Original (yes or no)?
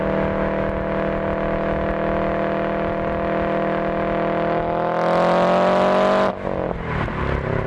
yes